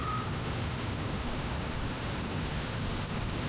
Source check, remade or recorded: remade